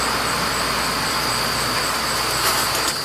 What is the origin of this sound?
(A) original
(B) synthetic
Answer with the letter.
A